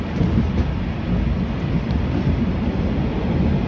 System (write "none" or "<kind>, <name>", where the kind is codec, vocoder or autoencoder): none